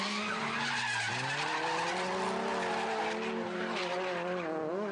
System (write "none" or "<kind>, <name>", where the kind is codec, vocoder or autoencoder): none